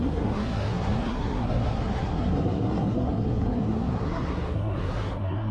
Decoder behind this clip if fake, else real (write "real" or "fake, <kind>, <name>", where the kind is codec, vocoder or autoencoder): fake, codec, SNAC